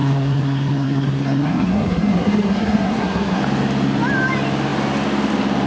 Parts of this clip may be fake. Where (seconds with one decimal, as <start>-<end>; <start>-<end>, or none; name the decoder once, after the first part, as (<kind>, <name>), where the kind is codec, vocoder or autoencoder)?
0.0-3.4 (codec, SNAC)